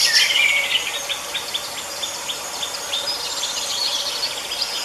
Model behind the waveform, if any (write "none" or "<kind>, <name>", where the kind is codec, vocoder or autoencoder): none